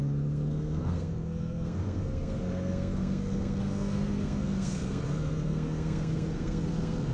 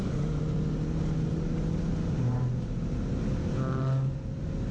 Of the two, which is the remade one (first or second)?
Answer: first